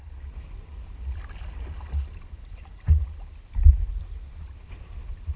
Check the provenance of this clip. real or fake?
real